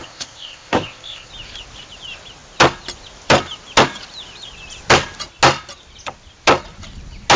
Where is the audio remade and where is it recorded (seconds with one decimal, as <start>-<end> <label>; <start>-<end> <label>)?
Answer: 0.0-1.3 remade; 1.3-7.4 recorded